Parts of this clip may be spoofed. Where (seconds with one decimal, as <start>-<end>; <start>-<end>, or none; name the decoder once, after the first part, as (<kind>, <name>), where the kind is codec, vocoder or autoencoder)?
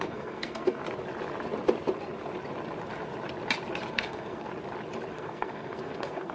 0.0-0.8 (codec, SNAC); 3.9-4.5; 5.1-6.3